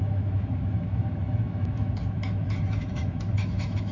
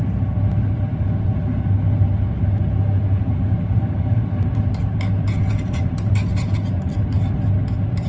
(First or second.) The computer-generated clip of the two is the first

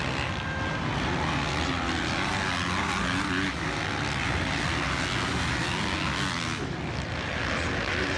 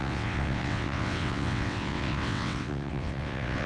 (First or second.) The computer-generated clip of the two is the second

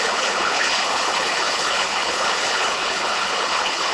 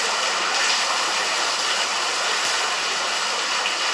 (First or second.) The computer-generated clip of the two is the first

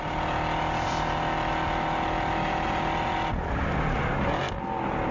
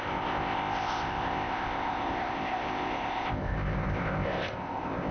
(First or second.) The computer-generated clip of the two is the second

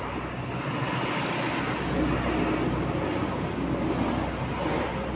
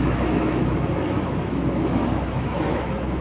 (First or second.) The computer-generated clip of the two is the second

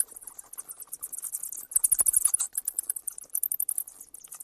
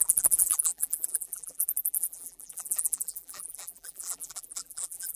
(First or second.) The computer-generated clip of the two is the second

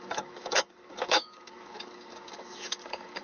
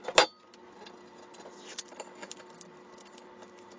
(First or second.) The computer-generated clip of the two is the first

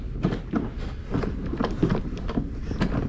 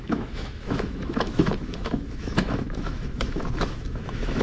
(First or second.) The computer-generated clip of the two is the second